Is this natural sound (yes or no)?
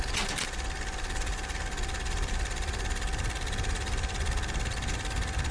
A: yes